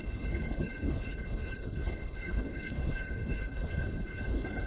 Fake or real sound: fake